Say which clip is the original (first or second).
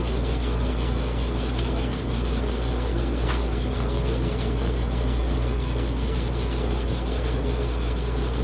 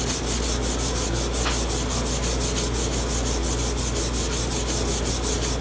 second